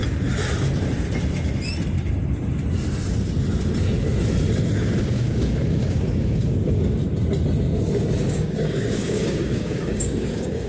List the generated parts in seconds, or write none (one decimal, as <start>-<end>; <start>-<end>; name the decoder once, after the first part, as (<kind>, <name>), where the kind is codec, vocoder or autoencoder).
5.0-7.0 (codec, DAC); 8.3-10.7